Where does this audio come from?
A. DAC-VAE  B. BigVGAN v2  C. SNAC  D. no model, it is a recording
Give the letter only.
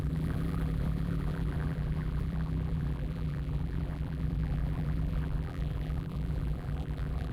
B